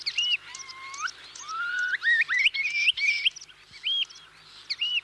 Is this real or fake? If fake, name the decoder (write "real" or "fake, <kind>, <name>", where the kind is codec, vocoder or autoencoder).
real